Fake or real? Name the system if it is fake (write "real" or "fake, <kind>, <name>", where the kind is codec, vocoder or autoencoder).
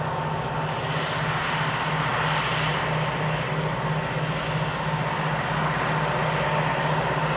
real